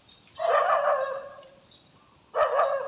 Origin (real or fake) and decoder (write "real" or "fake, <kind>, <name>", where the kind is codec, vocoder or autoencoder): real